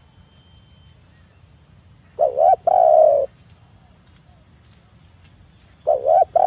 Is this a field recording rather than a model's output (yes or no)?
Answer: yes